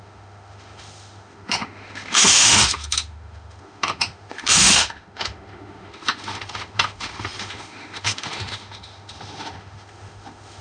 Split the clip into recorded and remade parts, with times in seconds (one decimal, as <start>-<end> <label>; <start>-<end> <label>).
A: 0.0-10.6 remade

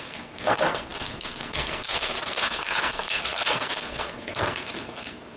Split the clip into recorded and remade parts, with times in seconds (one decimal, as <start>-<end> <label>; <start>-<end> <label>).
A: 0.0-5.4 remade

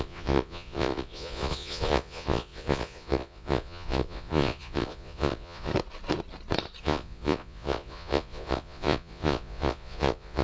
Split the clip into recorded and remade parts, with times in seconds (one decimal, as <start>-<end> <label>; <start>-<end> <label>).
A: 0.0-5.7 remade; 5.7-6.8 recorded; 6.8-10.4 remade

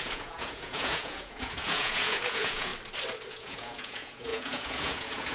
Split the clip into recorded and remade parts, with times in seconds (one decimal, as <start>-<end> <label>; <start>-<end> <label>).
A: 0.0-2.7 remade; 2.7-3.3 recorded; 3.3-5.3 remade

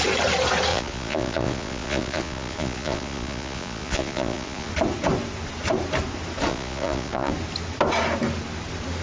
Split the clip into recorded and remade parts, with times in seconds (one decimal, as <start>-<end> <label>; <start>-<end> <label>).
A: 0.0-0.7 recorded; 0.7-4.7 remade; 4.7-6.5 recorded; 6.5-7.3 remade; 7.3-9.0 recorded

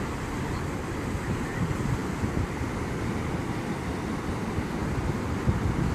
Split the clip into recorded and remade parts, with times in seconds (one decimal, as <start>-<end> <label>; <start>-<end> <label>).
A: 0.0-5.9 recorded